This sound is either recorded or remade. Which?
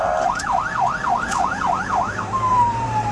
remade